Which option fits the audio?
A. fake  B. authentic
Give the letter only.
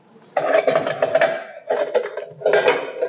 B